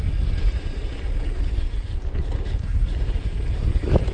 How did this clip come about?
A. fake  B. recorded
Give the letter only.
B